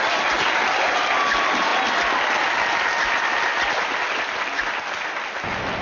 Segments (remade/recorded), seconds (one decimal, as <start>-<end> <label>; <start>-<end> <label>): 0.0-5.8 recorded

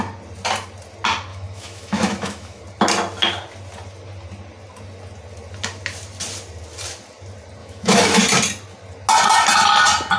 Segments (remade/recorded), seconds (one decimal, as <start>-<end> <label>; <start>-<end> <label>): 0.0-1.3 recorded; 1.3-2.6 remade; 2.6-7.6 recorded; 7.6-8.2 remade; 8.2-10.2 recorded